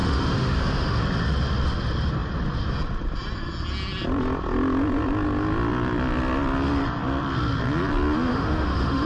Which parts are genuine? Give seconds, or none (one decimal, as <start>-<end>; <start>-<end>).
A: 1.0-8.3